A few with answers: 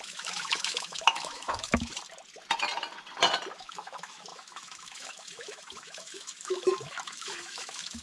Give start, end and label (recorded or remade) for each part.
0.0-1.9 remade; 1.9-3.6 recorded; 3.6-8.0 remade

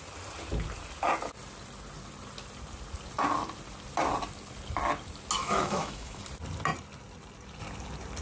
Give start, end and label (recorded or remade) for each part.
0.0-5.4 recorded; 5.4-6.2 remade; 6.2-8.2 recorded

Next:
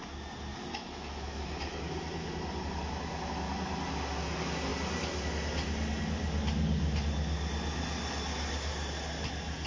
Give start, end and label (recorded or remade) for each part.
0.0-0.5 recorded; 0.5-1.8 remade; 1.8-9.7 recorded